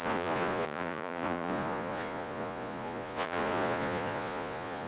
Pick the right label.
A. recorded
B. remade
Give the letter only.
B